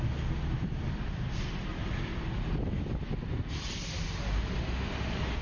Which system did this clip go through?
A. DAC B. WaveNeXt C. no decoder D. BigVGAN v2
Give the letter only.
C